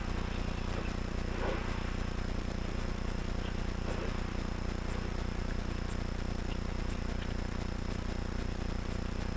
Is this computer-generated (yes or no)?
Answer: no